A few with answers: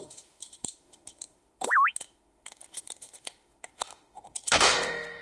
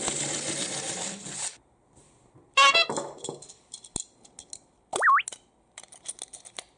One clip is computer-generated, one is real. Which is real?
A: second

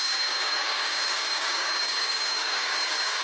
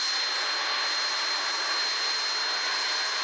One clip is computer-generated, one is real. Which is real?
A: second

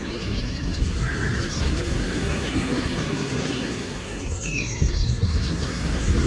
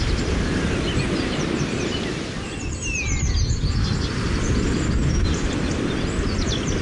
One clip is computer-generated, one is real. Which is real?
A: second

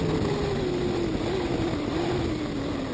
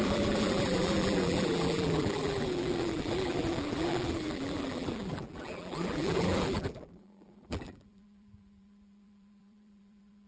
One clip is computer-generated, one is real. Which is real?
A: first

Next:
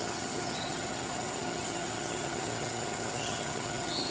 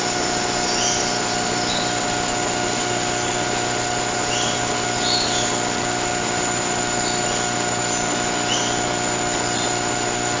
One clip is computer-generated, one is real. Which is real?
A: second